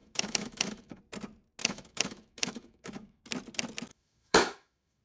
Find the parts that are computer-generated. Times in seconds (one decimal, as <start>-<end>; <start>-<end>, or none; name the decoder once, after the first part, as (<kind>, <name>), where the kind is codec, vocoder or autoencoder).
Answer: 0.0-1.0 (autoencoder, DAC-VAE); 1.6-3.2; 3.9-5.0